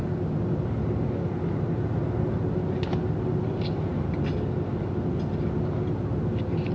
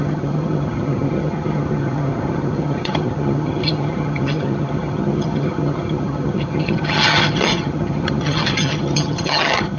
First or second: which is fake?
second